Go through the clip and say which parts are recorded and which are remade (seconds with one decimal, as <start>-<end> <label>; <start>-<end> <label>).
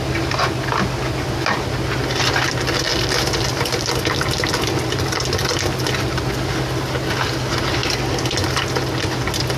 0.0-2.9 recorded; 2.9-4.9 remade; 4.9-9.6 recorded